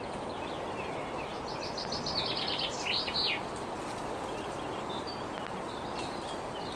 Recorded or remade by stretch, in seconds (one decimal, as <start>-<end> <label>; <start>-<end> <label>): 0.0-6.8 recorded